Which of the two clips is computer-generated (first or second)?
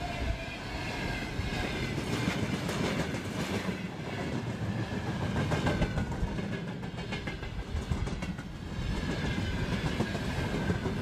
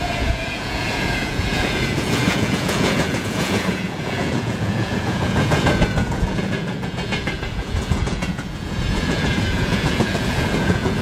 second